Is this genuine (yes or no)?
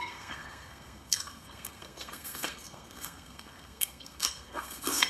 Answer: no